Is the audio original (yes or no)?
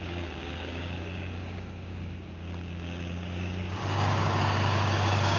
no